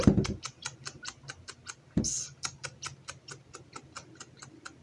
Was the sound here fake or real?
real